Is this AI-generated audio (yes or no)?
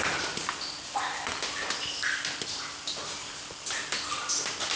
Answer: no